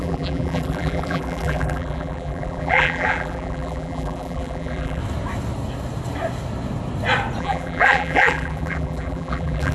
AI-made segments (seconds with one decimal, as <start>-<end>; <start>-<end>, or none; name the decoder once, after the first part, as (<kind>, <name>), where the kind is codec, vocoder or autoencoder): 0.0-5.0 (vocoder, BigVGAN v2); 7.4-9.7